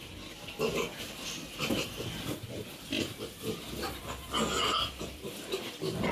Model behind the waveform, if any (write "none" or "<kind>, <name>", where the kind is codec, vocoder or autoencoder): vocoder, BigVGAN v2